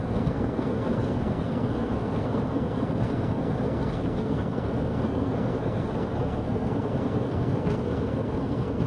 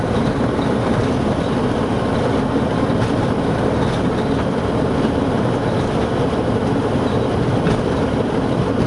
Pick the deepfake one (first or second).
first